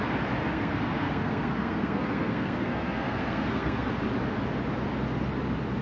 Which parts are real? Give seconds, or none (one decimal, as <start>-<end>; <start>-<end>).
0.0-0.4; 3.9-5.8